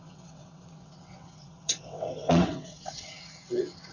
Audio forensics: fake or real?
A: fake